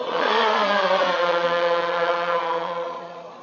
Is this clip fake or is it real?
fake